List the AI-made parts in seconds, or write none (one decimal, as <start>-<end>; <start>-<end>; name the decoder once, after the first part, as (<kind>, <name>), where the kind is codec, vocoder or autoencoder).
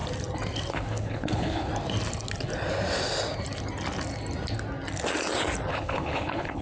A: 0.7-1.7 (codec, HILCodec); 5.7-6.6